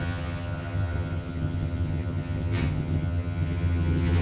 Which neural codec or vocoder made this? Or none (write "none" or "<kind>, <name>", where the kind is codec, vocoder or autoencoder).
vocoder, HiFi-GAN